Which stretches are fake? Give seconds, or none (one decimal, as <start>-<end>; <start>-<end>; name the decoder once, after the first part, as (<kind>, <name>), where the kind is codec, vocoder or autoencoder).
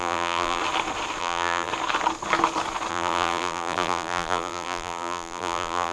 0.0-0.6 (vocoder, BigVGAN v2); 1.2-1.7; 2.9-5.9